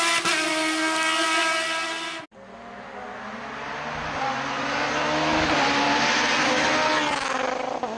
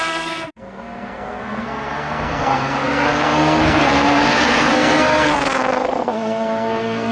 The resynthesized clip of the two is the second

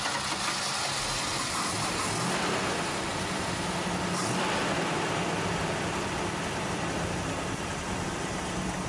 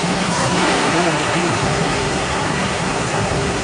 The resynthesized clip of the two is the second